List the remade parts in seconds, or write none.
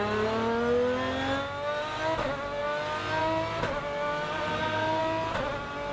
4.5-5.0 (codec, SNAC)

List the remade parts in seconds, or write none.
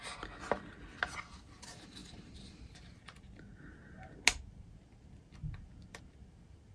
none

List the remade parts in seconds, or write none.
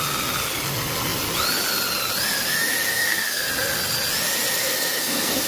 2.9-3.5 (codec, SNAC); 4.6-5.5